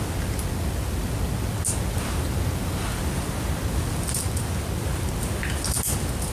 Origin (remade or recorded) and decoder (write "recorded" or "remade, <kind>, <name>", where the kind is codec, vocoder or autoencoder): recorded